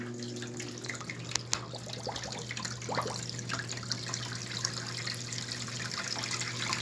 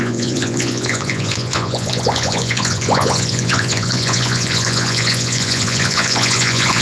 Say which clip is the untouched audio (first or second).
first